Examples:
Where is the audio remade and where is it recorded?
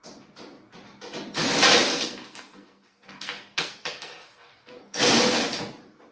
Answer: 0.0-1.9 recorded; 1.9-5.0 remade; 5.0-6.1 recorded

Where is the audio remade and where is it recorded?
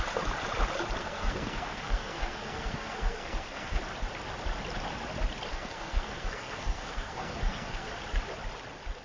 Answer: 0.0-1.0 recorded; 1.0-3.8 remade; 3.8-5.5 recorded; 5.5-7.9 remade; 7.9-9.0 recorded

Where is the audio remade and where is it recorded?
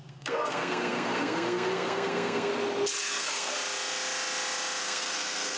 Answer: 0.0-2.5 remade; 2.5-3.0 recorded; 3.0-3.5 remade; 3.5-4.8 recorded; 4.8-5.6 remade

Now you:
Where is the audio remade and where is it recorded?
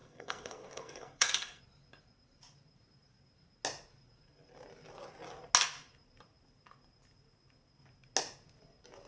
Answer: 0.0-1.6 remade; 1.6-9.1 recorded